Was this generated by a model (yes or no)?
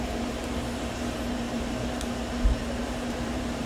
yes